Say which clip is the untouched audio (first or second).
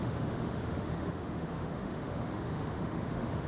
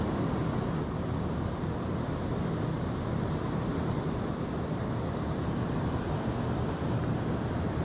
second